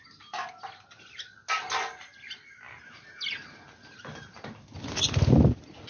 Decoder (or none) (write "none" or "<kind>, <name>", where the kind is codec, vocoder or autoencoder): none